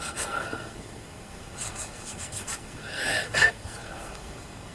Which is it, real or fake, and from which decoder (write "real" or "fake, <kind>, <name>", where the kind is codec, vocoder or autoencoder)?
fake, codec, SNAC